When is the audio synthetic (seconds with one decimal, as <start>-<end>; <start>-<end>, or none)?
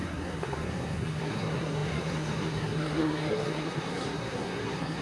0.0-5.0